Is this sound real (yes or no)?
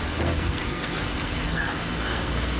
no